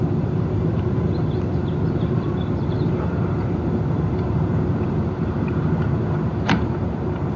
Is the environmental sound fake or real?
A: fake